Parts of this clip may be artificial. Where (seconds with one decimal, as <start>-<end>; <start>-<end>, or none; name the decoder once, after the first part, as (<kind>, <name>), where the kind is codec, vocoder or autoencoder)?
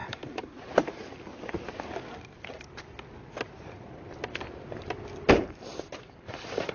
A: 0.0-1.3 (vocoder, BigVGAN v2); 5.3-6.7